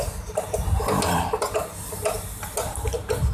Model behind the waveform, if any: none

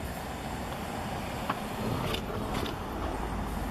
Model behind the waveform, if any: none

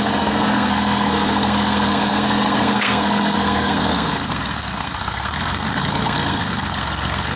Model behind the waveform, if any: codec, SNAC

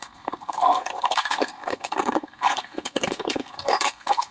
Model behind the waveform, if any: codec, SNAC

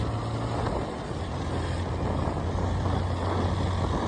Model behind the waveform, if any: none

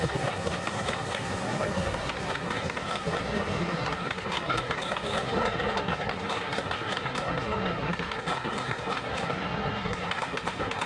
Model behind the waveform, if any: codec, SNAC